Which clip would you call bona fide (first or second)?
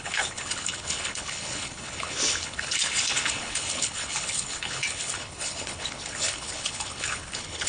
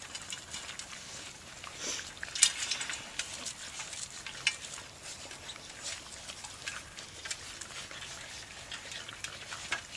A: second